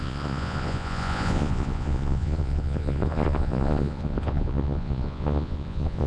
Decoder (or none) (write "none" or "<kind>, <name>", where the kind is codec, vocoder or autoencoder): vocoder, Vocos